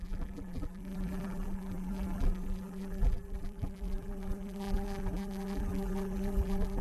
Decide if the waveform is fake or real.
fake